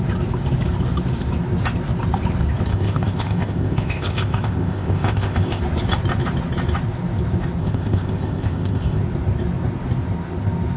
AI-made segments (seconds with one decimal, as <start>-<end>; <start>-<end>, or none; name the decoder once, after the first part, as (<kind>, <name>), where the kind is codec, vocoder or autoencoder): 2.7-5.6 (codec, ZipCodec); 7.6-9.0